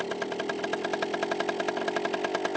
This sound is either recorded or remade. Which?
recorded